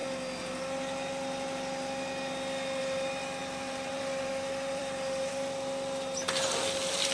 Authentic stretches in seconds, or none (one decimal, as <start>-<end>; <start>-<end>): 0.0-3.4; 5.3-7.1